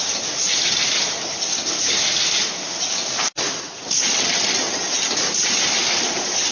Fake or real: real